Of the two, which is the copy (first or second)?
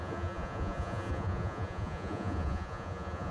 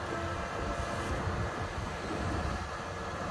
first